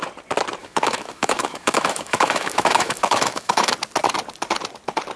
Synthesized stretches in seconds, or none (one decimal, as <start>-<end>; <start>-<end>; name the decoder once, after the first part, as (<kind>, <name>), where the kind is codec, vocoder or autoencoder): 0.6-3.7 (autoencoder, DAC-VAE)